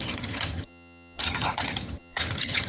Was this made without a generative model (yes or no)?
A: no